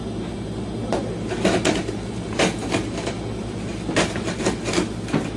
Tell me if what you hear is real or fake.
real